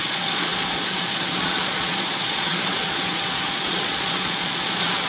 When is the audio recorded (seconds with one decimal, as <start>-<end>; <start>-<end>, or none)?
none